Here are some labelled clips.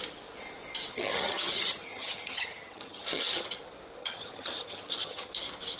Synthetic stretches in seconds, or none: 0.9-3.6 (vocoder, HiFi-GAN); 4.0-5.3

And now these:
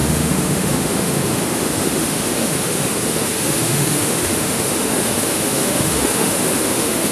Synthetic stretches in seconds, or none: 0.0-7.1 (autoencoder, DAC-VAE)